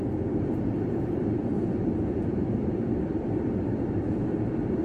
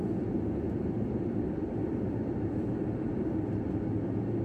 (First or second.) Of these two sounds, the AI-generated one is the first